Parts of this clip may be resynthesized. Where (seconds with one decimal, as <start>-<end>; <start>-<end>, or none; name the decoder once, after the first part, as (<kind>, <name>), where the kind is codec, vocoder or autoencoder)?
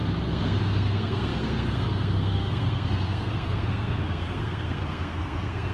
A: 0.0-5.7 (codec, SNAC)